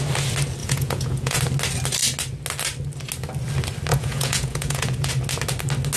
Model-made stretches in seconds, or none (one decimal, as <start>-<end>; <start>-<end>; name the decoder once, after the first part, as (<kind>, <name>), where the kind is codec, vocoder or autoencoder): 0.6-1.4 (vocoder, Vocos); 3.9-5.1

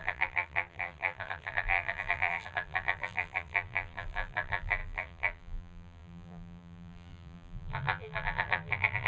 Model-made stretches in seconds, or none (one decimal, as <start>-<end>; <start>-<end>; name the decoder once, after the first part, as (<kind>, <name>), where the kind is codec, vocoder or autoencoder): 0.0-9.1 (vocoder, BigVGAN v2)